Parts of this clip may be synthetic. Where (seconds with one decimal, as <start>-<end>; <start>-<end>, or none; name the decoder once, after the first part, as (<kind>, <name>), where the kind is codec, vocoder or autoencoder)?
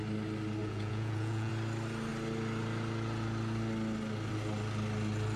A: 0.6-1.5 (vocoder, Vocos)